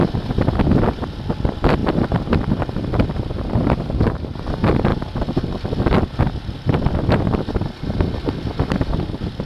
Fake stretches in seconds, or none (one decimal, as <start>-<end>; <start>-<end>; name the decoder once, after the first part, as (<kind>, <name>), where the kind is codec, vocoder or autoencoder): none